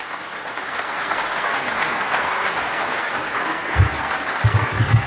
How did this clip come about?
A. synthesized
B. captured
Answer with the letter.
A